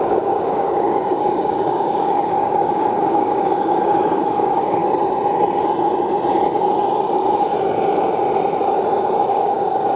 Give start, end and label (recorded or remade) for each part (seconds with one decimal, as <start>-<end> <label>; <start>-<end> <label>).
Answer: 0.0-4.8 remade; 4.8-9.3 recorded; 9.3-10.0 remade